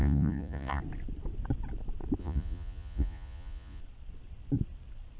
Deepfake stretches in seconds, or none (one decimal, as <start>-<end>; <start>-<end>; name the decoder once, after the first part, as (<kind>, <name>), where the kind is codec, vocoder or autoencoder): 0.0-0.8 (vocoder, Vocos); 2.2-3.8